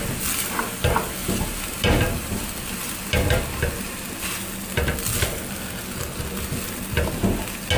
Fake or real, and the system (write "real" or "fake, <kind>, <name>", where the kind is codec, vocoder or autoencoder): real